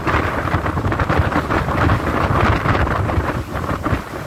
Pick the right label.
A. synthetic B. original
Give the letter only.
B